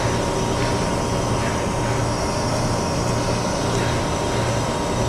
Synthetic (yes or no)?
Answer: no